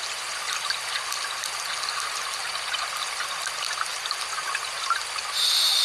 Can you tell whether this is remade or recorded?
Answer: recorded